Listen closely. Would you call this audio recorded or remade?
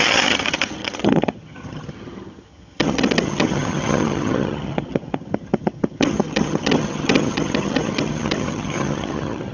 remade